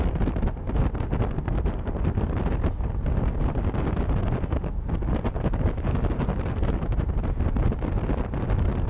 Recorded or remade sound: recorded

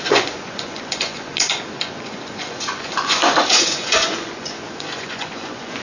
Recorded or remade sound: remade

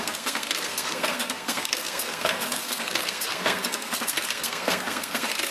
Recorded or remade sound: remade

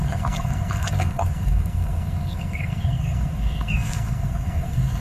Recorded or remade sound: remade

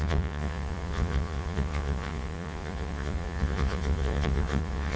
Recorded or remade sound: remade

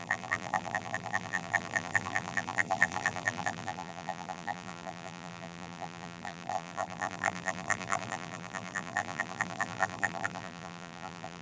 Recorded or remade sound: remade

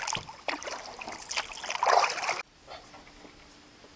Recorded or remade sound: recorded